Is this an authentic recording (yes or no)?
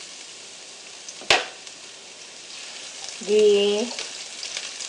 yes